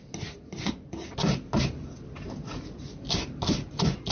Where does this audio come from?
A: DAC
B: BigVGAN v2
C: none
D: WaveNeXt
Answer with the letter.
C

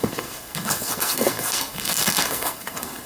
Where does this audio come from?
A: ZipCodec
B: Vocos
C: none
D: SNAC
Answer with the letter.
D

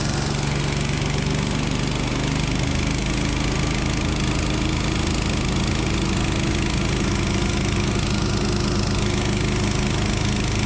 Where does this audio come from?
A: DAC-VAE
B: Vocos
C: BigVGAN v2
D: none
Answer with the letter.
D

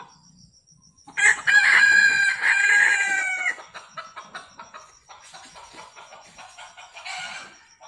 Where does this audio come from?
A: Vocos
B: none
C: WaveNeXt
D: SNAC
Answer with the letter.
A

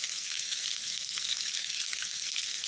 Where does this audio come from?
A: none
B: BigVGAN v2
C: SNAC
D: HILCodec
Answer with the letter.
C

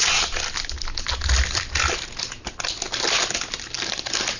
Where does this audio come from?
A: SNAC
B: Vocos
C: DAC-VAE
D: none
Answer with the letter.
D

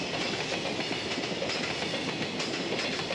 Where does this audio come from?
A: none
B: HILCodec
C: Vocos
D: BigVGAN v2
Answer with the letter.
A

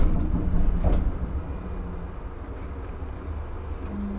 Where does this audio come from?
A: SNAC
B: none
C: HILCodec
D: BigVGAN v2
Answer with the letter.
B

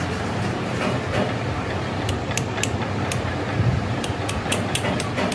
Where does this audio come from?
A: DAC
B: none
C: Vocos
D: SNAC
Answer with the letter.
B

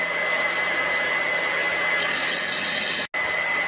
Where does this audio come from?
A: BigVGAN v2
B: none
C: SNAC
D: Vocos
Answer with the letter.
B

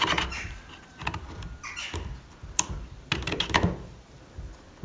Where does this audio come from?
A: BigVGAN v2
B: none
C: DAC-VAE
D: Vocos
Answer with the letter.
B